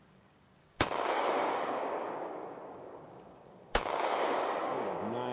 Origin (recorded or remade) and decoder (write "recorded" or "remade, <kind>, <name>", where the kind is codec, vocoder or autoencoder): remade, codec, DAC